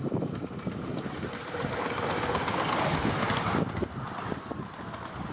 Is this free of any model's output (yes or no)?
yes